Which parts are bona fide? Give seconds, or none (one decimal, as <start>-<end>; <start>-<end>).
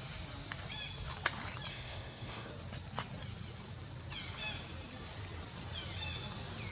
0.0-1.7; 2.5-6.7